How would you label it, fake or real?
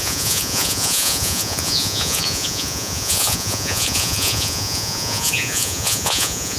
fake